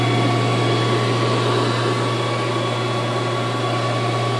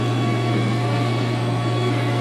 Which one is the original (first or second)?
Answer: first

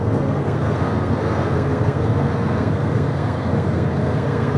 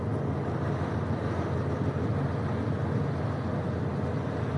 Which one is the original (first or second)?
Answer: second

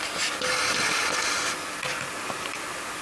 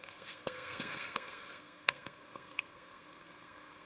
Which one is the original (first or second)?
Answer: first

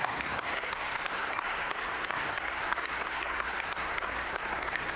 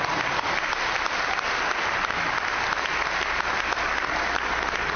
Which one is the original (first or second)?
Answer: second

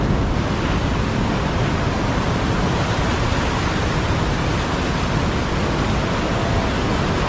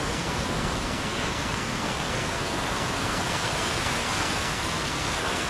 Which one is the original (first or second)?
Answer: first